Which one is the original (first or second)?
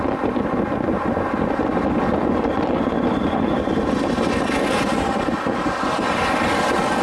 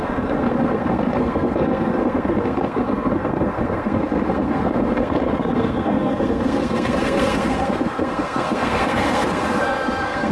first